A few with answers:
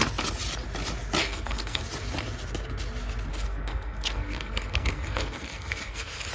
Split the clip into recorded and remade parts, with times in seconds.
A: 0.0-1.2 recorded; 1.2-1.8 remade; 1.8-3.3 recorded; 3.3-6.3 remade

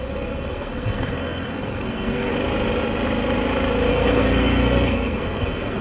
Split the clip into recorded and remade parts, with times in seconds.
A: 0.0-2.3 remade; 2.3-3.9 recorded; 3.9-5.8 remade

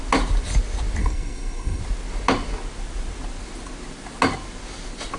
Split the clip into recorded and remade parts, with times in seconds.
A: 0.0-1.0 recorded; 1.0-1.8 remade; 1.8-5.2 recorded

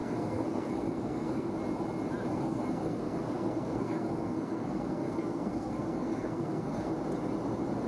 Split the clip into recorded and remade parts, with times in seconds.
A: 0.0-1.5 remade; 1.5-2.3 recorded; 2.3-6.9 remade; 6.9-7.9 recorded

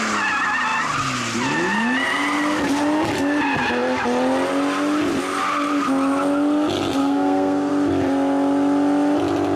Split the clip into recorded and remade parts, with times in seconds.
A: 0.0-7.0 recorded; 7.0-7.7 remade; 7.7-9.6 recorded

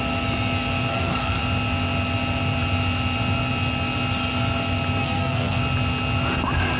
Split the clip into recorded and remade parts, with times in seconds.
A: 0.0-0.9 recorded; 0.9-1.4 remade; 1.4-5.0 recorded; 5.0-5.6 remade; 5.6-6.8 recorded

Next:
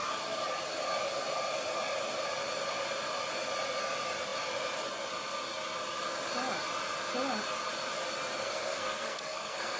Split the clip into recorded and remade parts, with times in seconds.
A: 0.0-8.4 recorded; 8.4-9.8 remade